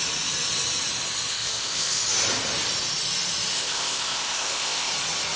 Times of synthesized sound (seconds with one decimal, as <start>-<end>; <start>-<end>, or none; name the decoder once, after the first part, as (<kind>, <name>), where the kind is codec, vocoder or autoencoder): 1.3-2.0 (codec, ZipCodec); 3.5-4.9